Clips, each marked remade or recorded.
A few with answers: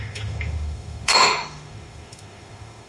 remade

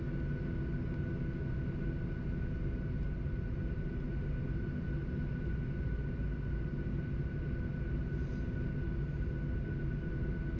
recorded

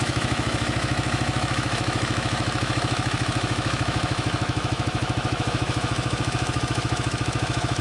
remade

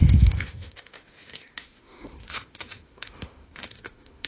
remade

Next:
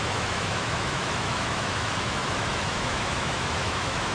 remade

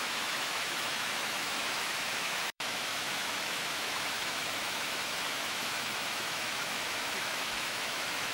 remade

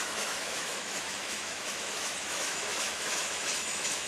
remade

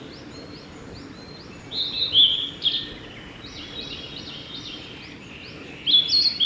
recorded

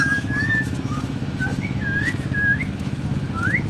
remade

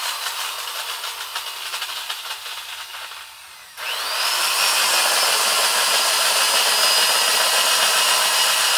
recorded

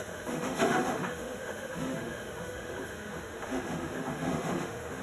remade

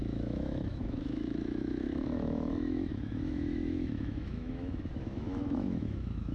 remade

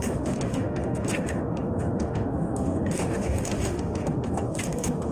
remade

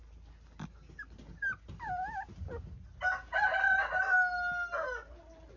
recorded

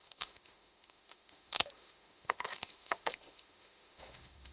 remade